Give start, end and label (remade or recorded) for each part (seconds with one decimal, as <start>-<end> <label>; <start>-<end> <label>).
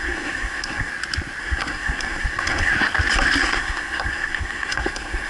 0.0-0.9 remade; 0.9-1.4 recorded; 1.4-2.7 remade; 2.7-3.4 recorded; 3.4-5.3 remade